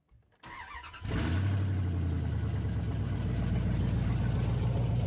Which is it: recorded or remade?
recorded